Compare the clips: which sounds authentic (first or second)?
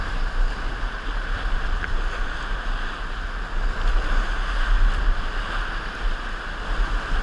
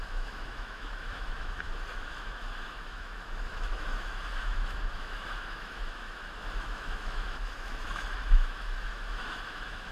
first